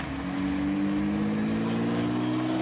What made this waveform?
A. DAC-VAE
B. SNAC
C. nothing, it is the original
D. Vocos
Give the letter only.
C